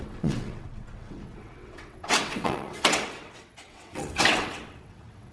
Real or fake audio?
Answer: fake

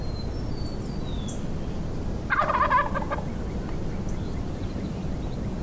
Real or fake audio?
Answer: real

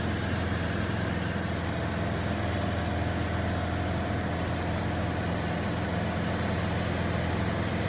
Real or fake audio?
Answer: real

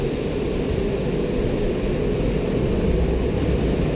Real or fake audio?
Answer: real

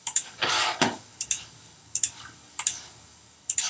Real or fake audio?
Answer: fake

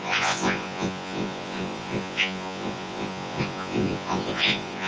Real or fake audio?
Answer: fake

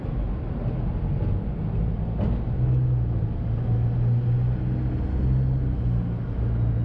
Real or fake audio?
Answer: real